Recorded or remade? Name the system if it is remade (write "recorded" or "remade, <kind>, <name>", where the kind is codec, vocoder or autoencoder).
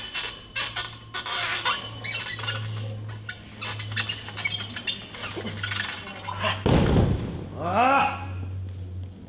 recorded